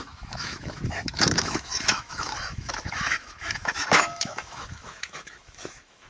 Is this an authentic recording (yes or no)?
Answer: no